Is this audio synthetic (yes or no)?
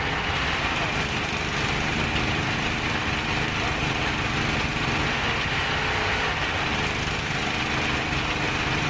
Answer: no